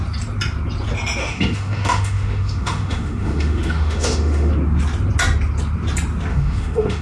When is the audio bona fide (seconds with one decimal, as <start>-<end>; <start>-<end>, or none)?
0.0-1.2; 4.5-6.3